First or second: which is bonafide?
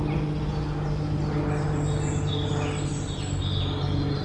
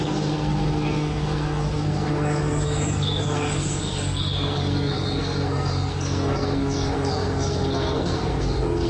first